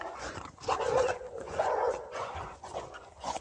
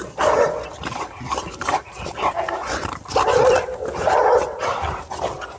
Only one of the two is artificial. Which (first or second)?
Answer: first